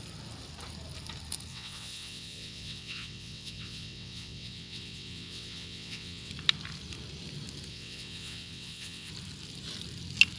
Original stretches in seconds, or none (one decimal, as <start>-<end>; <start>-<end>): 0.0-1.5; 6.3-7.7; 9.1-10.4

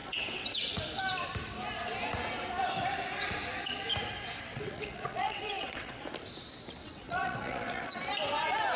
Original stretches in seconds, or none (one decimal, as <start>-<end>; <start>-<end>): 0.8-4.5; 6.0-6.8; 8.1-8.8

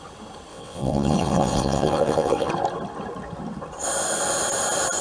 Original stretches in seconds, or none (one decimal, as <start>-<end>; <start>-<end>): 0.0-0.5; 2.5-5.0

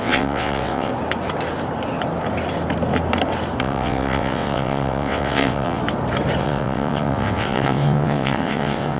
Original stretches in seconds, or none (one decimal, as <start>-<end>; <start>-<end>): 0.9-3.6; 5.8-6.4

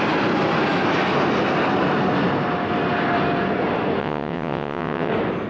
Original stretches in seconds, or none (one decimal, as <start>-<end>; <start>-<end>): 0.0-4.0; 5.1-5.5

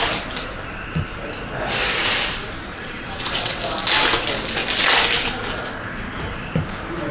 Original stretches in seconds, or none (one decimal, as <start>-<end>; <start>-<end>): 0.0-0.5; 1.0-2.7; 3.6-7.1